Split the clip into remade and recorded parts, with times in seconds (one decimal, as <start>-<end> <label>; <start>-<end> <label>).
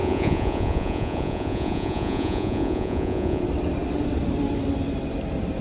0.0-3.4 remade; 3.4-5.6 recorded